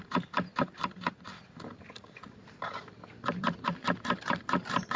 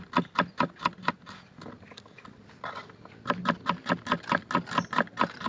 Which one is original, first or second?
second